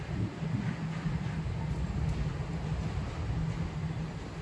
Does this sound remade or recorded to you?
recorded